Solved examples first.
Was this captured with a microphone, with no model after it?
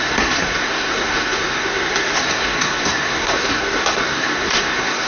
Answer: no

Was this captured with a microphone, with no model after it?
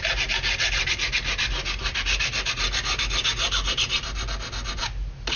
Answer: yes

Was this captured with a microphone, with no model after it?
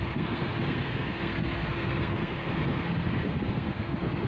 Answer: no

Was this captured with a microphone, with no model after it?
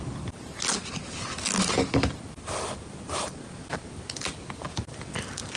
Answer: yes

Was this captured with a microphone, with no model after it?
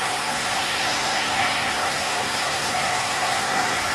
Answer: no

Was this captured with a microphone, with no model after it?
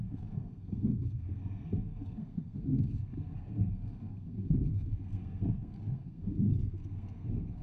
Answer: no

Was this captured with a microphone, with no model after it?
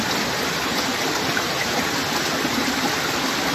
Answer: yes